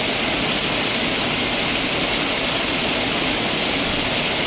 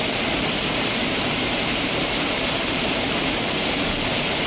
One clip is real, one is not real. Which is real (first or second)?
first